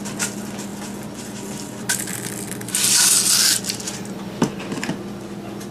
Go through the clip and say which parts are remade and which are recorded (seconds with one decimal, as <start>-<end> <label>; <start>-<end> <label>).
0.0-5.7 recorded